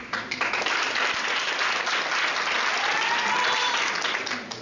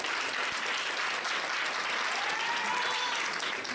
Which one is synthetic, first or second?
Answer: first